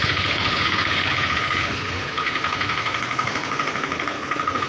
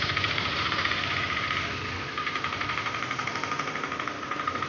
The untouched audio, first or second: second